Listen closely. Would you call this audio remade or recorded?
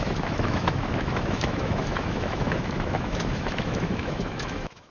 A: remade